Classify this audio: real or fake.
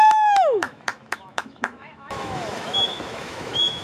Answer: fake